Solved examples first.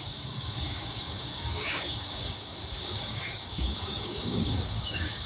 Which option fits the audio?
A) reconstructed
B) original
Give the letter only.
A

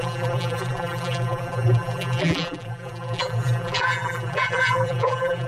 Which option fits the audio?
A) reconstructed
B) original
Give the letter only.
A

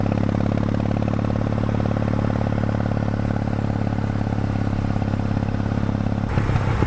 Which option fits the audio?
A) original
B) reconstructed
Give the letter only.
A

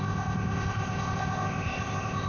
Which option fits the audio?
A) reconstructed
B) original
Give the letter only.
A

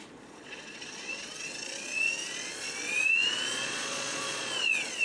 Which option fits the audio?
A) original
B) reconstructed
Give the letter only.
B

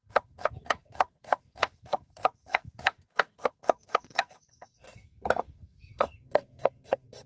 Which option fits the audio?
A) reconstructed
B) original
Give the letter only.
A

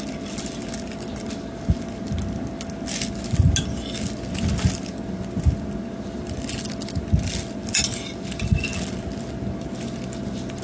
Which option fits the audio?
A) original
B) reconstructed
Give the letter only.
A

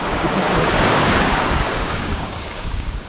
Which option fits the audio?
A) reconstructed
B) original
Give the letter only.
A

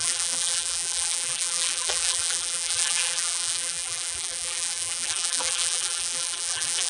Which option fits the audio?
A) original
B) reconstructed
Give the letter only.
B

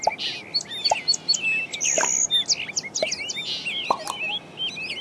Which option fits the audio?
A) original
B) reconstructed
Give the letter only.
A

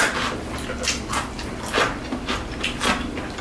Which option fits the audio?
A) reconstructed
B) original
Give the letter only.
B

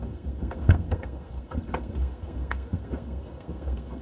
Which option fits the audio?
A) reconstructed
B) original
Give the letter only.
A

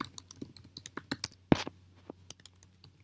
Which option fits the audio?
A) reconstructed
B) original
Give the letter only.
B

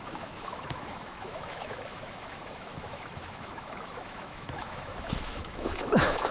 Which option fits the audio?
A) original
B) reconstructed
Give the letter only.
B